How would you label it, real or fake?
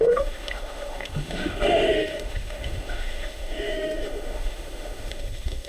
fake